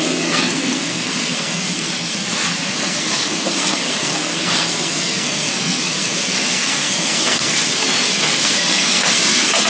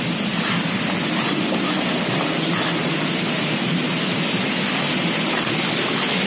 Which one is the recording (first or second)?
second